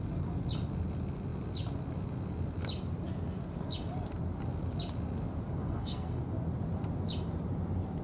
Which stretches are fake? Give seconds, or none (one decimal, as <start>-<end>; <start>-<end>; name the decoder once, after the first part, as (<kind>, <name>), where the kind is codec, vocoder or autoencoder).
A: 5.5-6.2 (codec, SNAC)